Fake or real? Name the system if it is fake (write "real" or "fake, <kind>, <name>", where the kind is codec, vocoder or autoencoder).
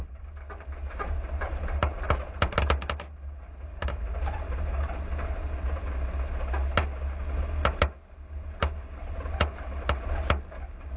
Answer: real